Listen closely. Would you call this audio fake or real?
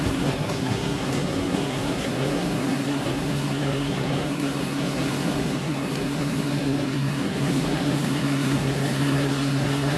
fake